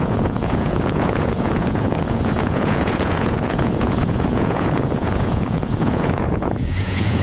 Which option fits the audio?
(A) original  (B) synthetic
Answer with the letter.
B